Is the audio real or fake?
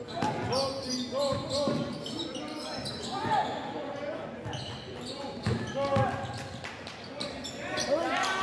real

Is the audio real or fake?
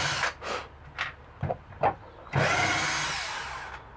real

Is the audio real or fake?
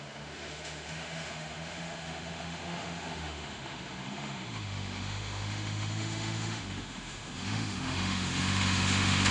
fake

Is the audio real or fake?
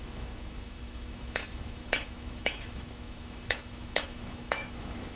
fake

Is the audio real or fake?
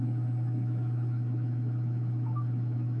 fake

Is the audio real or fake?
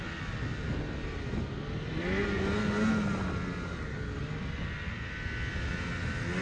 real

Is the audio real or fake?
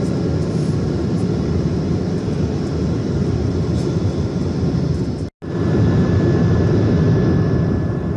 real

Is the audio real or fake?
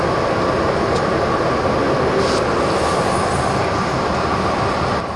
real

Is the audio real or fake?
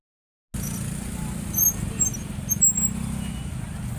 real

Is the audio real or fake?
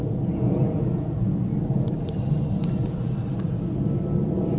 real